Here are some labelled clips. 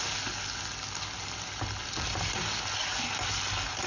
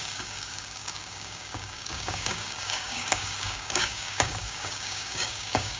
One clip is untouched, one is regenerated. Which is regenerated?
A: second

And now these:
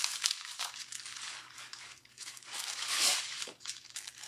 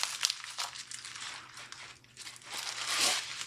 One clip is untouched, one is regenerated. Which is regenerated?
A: first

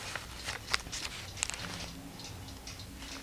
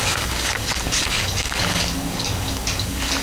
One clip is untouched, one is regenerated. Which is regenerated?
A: second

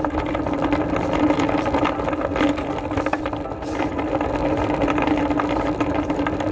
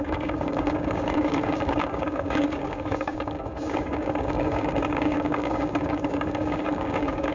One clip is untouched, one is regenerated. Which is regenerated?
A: second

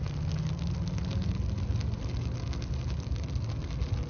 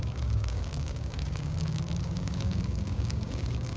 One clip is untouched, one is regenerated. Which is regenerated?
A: second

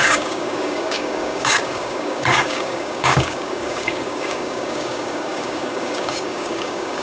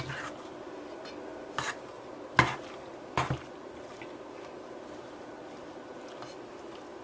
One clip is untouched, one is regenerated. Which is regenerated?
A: first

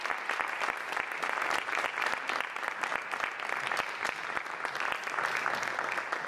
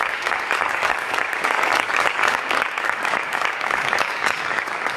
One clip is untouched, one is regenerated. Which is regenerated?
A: second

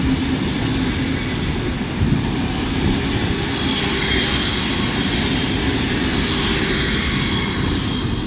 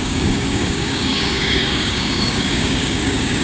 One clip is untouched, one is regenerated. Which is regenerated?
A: second